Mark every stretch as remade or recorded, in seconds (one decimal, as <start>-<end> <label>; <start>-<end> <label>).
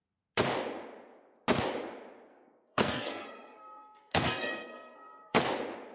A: 0.0-2.3 recorded; 2.3-5.4 remade; 5.4-5.9 recorded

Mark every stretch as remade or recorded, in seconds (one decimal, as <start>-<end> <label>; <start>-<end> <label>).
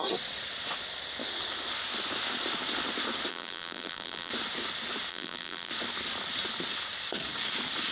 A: 0.0-3.3 recorded; 3.3-4.3 remade; 4.3-5.1 recorded; 5.1-5.7 remade; 5.7-7.9 recorded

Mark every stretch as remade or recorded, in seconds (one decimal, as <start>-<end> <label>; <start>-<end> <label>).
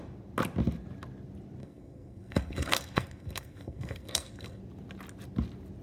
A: 0.0-1.6 recorded; 1.6-4.6 remade; 4.6-5.8 recorded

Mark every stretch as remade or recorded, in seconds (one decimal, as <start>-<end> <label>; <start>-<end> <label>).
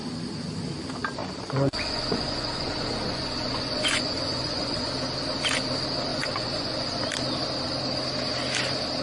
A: 0.0-1.2 recorded; 1.2-4.9 remade; 4.9-6.1 recorded; 6.1-7.0 remade; 7.0-9.0 recorded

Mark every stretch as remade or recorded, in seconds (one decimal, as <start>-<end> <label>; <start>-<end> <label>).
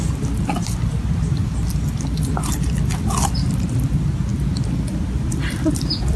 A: 0.0-1.4 remade; 1.4-2.0 recorded; 2.0-4.3 remade; 4.3-4.9 recorded; 4.9-6.2 remade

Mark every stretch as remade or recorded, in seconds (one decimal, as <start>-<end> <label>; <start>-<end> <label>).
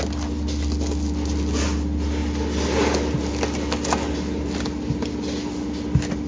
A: 0.0-6.3 recorded